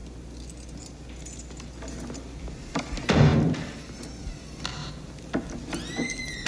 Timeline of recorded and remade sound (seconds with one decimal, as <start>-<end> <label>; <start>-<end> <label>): 0.0-6.5 recorded